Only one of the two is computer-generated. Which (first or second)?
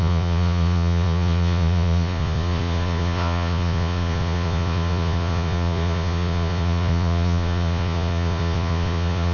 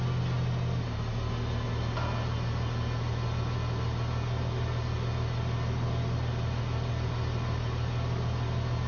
first